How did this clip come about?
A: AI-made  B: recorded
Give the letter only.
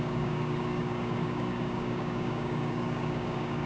A